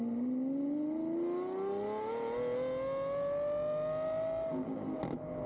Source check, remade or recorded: recorded